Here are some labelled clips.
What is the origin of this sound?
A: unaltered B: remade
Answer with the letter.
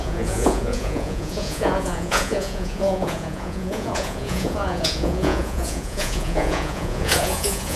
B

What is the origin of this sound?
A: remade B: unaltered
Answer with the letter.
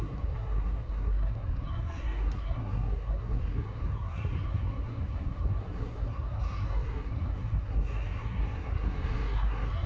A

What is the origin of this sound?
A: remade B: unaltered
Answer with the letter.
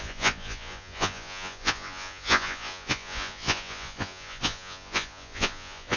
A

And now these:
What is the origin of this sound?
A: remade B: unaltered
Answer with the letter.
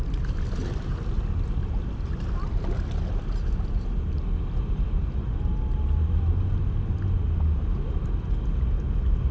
B